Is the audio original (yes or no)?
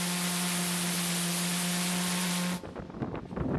yes